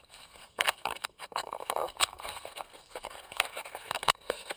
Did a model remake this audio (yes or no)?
yes